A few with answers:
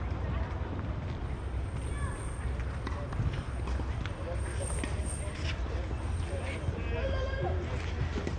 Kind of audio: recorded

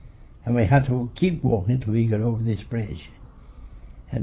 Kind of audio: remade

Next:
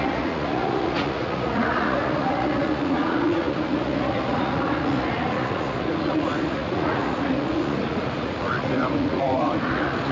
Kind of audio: remade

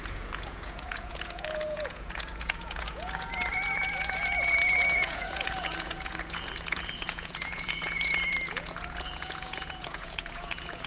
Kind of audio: remade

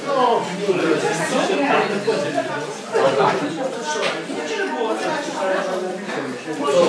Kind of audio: recorded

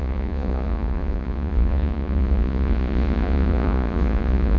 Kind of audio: remade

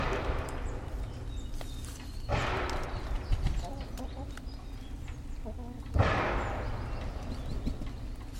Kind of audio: recorded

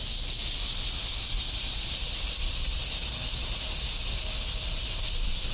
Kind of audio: recorded